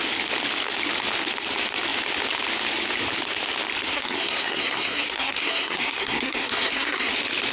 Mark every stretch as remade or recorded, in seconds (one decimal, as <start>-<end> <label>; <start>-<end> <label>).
0.0-3.9 recorded; 3.9-7.1 remade; 7.1-7.5 recorded